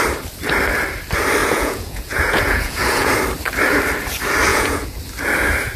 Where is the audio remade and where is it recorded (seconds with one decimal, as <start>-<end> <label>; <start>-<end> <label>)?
0.0-1.4 recorded; 1.4-3.1 remade; 3.1-4.5 recorded; 4.5-5.0 remade; 5.0-5.8 recorded